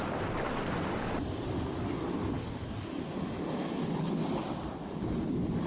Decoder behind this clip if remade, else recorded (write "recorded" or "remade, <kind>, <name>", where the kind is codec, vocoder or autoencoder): recorded